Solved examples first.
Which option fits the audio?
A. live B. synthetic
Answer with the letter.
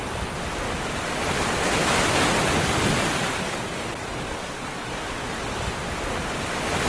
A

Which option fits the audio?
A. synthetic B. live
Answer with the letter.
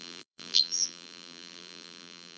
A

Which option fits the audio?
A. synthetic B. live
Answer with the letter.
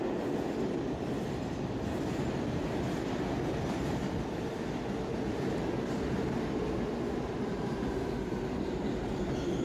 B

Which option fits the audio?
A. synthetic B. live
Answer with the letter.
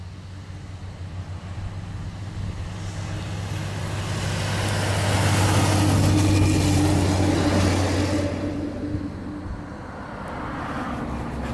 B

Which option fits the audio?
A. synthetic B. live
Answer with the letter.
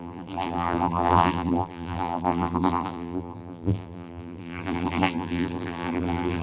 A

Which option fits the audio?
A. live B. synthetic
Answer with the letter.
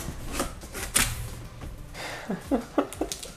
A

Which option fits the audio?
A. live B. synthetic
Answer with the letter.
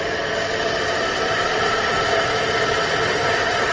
B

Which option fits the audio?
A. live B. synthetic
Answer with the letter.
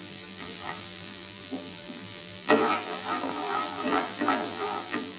B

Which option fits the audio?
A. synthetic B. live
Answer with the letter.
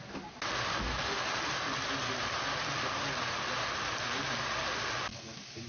B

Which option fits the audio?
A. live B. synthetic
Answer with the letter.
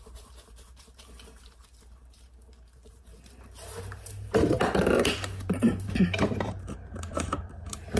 B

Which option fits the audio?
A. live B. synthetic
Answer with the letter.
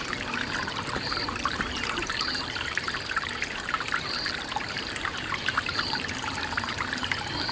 B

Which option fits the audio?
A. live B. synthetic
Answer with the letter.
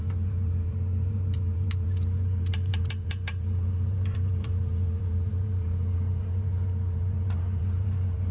B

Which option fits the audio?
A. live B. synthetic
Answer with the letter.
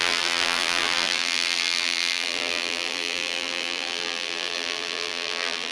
B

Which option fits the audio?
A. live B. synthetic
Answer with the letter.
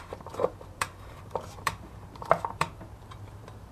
B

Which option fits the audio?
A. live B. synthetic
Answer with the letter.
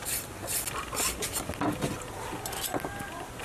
A